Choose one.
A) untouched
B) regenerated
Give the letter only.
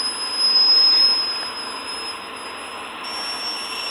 A